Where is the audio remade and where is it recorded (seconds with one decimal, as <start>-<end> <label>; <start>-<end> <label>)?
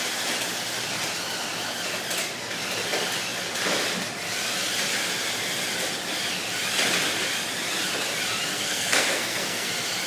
0.0-8.5 recorded; 8.5-9.7 remade; 9.7-10.1 recorded